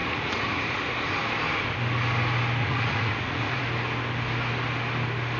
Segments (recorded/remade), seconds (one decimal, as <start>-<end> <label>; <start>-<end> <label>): 0.0-0.9 remade; 0.9-2.6 recorded; 2.6-3.6 remade; 3.6-5.4 recorded